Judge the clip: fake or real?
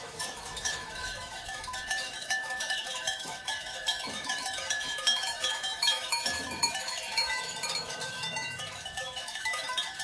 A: fake